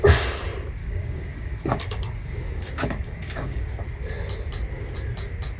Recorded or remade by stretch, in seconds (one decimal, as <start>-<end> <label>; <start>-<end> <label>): 0.0-0.8 recorded; 0.8-3.6 remade; 3.6-5.6 recorded